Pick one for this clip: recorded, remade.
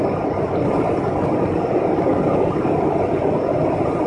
recorded